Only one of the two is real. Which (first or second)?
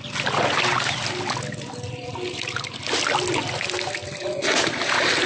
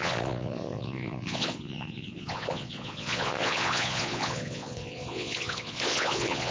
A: first